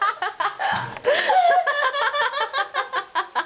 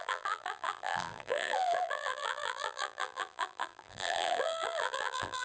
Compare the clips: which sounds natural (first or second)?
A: first